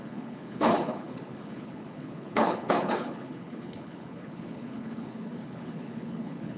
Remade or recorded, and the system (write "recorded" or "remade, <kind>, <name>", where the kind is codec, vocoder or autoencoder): remade, codec, HILCodec